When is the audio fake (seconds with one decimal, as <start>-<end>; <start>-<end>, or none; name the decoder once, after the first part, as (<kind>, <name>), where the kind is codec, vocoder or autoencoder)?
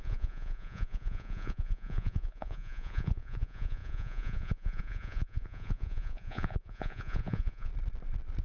0.0-7.7 (vocoder, Vocos)